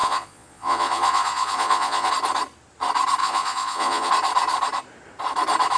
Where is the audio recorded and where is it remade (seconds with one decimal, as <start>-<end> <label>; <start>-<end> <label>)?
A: 0.0-2.1 remade; 2.1-3.2 recorded; 3.2-4.1 remade; 4.1-5.8 recorded